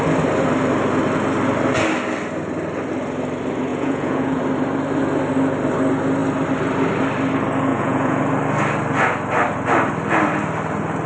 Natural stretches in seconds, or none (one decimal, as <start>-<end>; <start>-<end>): 0.0-3.7; 4.4-7.7; 8.2-11.1